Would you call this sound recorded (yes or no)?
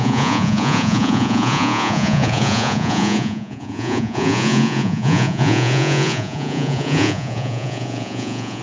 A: no